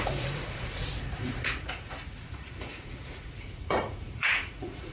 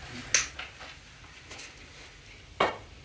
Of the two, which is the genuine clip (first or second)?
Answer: second